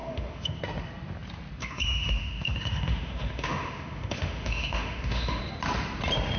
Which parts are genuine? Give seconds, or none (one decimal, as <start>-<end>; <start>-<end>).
0.6-1.6; 5.4-6.4